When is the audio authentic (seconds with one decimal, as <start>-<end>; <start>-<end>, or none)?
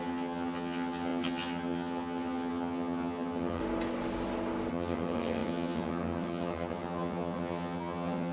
3.6-4.7